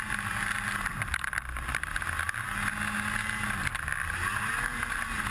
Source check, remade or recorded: recorded